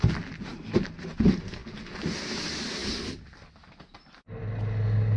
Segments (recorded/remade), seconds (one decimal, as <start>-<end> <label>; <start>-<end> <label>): 0.0-5.2 recorded